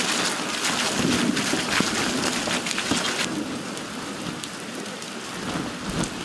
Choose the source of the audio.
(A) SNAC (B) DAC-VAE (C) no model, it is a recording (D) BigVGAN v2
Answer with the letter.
C